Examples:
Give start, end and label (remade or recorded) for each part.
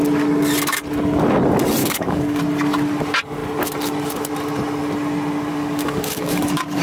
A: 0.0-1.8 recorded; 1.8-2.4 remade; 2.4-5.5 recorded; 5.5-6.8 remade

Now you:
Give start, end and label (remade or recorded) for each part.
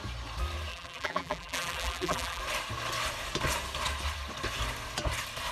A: 0.0-0.7 recorded; 0.7-2.4 remade; 2.4-5.5 recorded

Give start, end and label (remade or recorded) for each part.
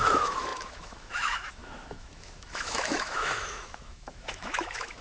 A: 0.0-5.0 remade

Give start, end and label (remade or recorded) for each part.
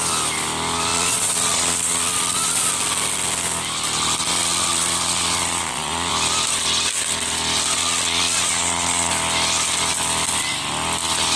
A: 0.0-0.9 recorded; 0.9-2.7 remade; 2.7-4.3 recorded; 4.3-6.1 remade; 6.1-7.8 recorded; 7.8-9.1 remade; 9.1-11.4 recorded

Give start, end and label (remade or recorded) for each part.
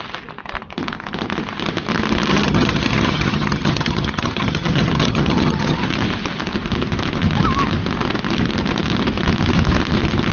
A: 0.0-2.3 recorded; 2.3-5.8 remade; 5.8-10.3 recorded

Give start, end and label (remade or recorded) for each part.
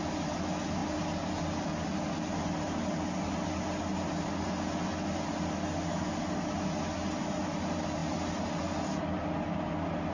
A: 0.0-10.1 recorded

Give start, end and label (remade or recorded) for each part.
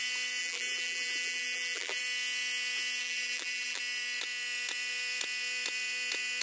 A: 0.0-0.4 recorded; 0.4-2.0 remade; 2.0-3.0 recorded; 3.0-3.8 remade; 3.8-6.4 recorded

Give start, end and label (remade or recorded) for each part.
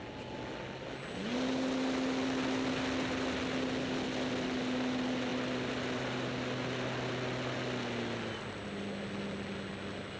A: 0.0-10.2 recorded